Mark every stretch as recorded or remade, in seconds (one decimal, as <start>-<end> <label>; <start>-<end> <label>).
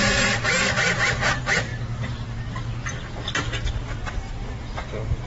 0.0-5.3 recorded